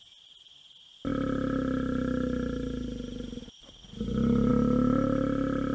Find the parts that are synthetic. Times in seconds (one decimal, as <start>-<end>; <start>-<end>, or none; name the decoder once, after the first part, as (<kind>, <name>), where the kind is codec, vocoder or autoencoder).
none